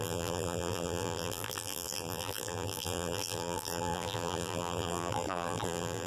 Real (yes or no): no